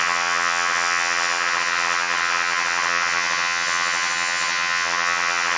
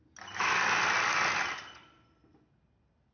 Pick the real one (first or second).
second